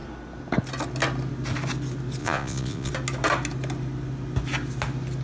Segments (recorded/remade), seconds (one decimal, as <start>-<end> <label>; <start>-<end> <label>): 0.0-2.2 recorded; 2.2-2.9 remade; 2.9-5.2 recorded